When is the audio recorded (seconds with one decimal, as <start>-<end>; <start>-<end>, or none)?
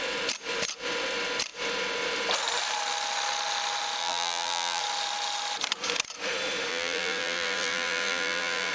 0.0-4.0; 4.8-6.7